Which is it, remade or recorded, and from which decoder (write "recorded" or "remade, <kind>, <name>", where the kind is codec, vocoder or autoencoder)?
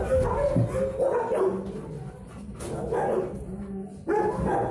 recorded